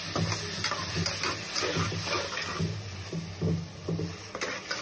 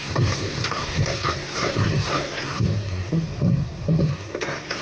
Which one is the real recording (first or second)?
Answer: first